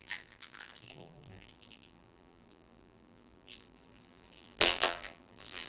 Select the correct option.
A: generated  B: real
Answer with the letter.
A